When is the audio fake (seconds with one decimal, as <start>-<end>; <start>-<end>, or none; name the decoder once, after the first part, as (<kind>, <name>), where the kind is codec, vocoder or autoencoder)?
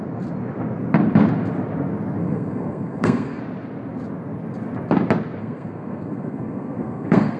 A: 2.2-3.4 (codec, SNAC); 5.4-7.4